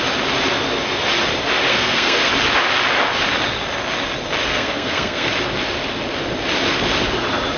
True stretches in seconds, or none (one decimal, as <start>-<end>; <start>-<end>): 0.0-1.7; 2.3-4.5; 5.3-7.6